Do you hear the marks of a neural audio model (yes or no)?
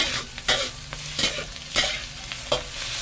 no